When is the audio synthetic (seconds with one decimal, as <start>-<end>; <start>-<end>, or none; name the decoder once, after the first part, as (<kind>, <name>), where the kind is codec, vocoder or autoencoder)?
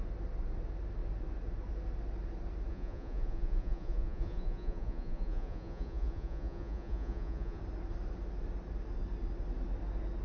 2.7-7.6 (vocoder, Vocos)